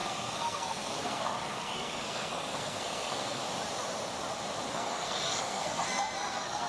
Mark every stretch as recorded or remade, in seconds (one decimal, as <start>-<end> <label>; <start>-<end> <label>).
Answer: 0.0-3.4 remade; 3.4-4.7 recorded; 4.7-6.7 remade